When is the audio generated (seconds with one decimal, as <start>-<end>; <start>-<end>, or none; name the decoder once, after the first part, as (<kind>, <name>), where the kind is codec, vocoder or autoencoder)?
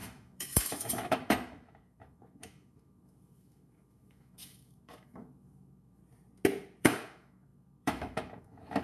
0.0-6.0 (autoencoder, DAC-VAE); 6.8-8.8